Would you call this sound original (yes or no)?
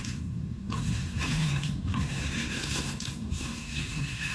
no